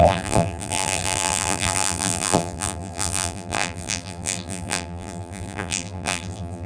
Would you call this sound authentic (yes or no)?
no